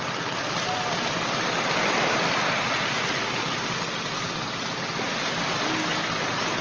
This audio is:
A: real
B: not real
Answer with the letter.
A